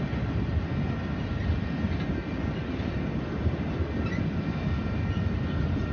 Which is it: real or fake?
real